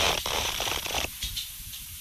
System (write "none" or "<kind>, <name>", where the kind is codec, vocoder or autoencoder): vocoder, BigVGAN v2